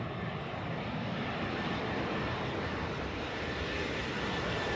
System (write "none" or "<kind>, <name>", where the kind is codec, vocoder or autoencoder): vocoder, BigVGAN v2